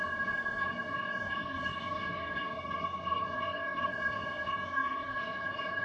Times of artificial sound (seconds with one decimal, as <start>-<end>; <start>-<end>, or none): 0.0-5.8

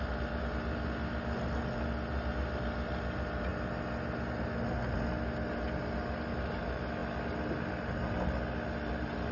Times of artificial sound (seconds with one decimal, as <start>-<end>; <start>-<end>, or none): none

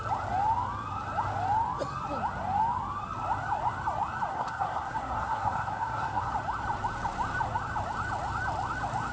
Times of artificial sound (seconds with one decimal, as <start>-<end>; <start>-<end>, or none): 4.3-6.3

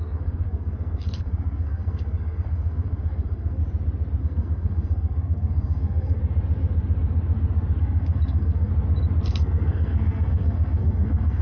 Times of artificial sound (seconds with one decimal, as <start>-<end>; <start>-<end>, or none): 0.0-3.6; 4.2-6.2; 7.8-8.7; 9.3-11.4